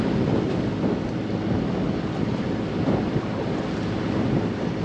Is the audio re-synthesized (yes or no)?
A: no